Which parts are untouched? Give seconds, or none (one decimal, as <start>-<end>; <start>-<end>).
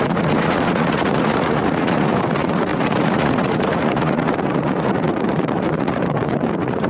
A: none